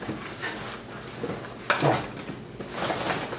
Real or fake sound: real